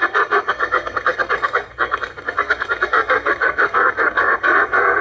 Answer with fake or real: fake